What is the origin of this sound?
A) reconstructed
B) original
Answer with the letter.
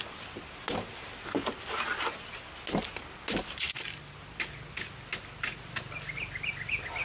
B